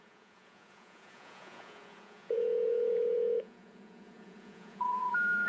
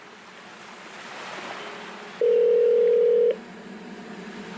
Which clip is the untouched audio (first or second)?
second